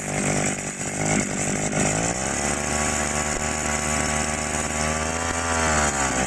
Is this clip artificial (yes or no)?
no